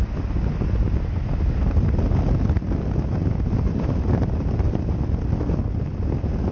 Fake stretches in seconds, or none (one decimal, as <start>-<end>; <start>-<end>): 1.2-2.1; 3.2-5.0